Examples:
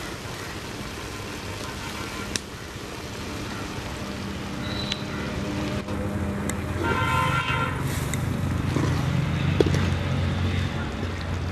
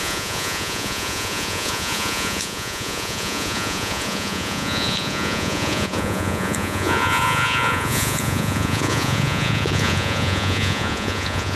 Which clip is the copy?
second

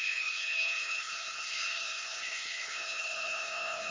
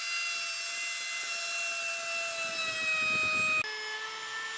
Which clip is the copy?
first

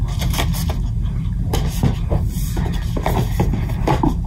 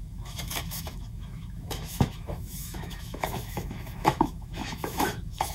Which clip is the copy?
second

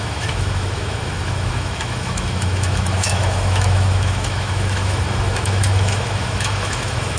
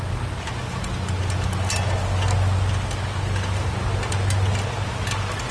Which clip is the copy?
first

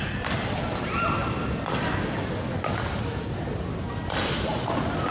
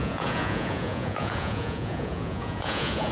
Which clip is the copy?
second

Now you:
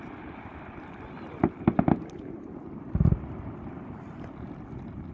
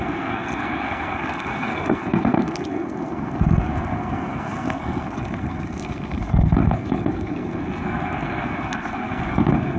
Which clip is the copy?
second